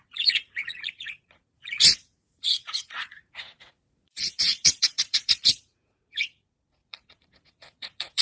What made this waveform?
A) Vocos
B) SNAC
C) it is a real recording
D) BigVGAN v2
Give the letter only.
A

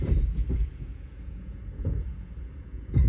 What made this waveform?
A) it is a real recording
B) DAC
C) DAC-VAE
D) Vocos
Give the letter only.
D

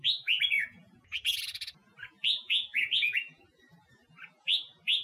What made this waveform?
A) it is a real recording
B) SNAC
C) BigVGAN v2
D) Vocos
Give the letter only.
D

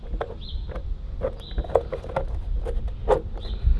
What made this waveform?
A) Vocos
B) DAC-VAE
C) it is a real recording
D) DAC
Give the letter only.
C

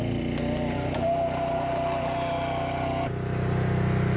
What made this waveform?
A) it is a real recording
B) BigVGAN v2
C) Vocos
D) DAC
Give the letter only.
A